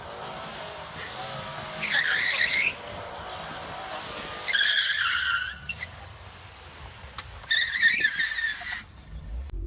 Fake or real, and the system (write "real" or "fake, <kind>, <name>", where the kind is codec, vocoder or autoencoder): real